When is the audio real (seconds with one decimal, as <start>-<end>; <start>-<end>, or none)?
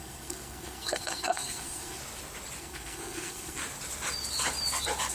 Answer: 2.0-2.6; 3.6-5.1